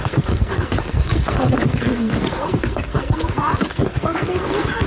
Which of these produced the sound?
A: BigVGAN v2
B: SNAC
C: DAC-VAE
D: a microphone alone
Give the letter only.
B